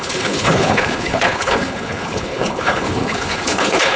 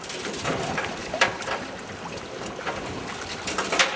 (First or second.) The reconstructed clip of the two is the first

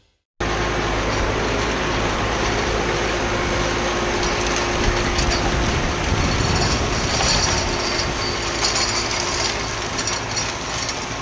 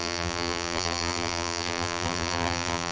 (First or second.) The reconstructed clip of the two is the second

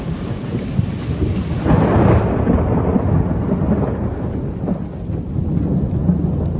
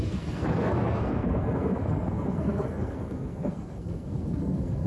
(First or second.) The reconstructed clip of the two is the second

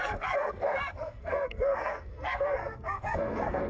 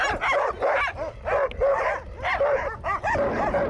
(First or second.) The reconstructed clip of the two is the first